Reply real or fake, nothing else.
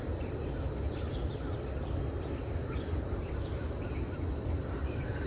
fake